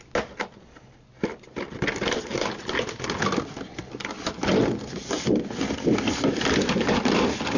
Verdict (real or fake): real